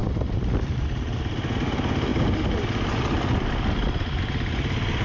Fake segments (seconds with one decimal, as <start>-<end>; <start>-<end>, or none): none